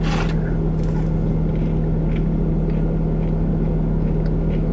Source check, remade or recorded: recorded